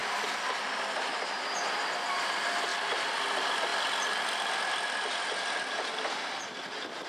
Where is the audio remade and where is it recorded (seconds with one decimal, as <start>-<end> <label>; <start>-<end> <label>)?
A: 0.0-1.2 recorded; 1.2-2.7 remade; 2.7-3.3 recorded; 3.3-7.1 remade

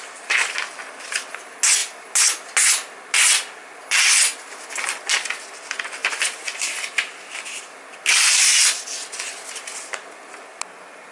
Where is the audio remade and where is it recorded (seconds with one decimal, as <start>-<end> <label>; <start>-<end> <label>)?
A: 0.0-6.0 recorded; 6.0-7.8 remade; 7.8-8.6 recorded; 8.6-9.9 remade; 9.9-11.1 recorded